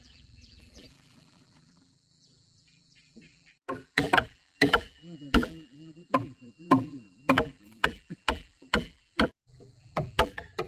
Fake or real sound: fake